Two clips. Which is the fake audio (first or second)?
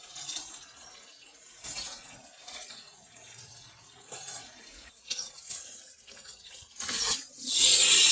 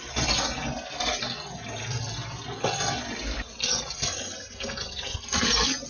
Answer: first